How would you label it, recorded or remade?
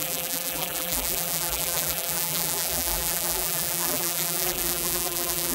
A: remade